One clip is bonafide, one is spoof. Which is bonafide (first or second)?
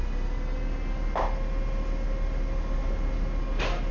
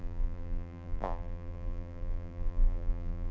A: first